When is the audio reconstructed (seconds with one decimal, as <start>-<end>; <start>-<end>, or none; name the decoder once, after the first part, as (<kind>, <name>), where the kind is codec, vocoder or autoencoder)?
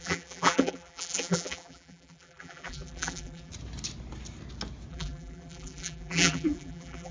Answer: 0.0-3.5 (vocoder, BigVGAN v2); 4.9-7.1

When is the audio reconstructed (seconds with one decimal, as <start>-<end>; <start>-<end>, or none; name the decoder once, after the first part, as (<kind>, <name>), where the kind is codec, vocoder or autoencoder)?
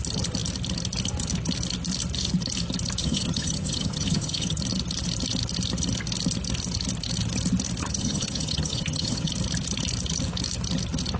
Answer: 3.0-4.6 (vocoder, HiFi-GAN); 7.8-9.3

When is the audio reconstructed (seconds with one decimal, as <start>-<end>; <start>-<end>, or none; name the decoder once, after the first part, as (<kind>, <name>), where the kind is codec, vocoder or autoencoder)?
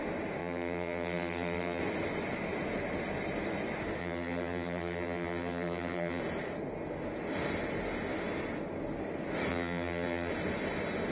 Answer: 0.4-1.8 (vocoder, BigVGAN v2); 4.0-6.2; 9.5-10.3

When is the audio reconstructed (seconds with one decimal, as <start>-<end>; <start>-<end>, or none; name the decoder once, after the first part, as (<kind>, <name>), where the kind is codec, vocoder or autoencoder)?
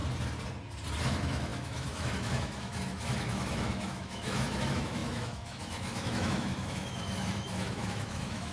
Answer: 1.0-8.5 (autoencoder, DAC-VAE)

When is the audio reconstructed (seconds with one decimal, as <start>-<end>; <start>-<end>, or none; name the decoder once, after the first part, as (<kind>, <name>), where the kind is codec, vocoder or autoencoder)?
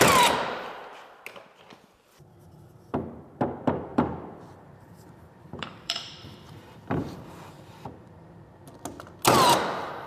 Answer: 3.9-8.4 (vocoder, BigVGAN v2)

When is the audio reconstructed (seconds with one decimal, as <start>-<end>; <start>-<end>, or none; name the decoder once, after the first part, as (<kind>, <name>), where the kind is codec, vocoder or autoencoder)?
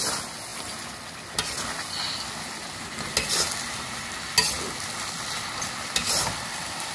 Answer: none